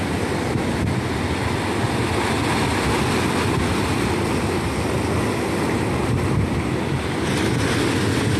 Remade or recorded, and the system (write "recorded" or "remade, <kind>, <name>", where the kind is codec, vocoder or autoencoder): recorded